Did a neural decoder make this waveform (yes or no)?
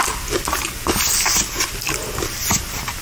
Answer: no